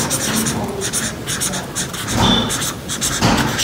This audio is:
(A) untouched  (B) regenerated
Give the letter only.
A